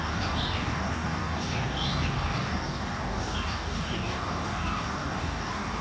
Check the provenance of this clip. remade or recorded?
remade